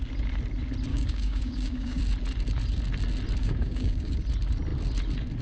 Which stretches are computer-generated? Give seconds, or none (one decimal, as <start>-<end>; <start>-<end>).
0.9-2.0; 3.4-4.2